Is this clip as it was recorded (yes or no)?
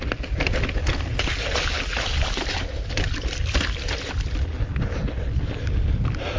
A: yes